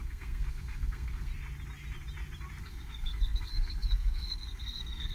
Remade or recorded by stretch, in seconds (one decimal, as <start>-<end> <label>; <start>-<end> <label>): 0.0-1.3 remade; 1.3-2.6 recorded; 2.6-5.1 remade